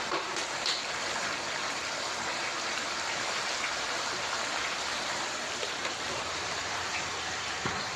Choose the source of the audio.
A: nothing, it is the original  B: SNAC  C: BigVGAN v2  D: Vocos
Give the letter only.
C